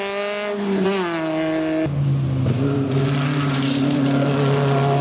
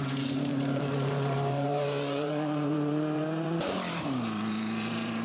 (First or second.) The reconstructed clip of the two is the second